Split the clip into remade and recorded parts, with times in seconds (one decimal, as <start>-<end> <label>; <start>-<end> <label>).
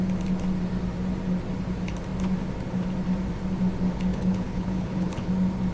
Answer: 0.0-4.1 recorded; 4.1-5.3 remade; 5.3-5.7 recorded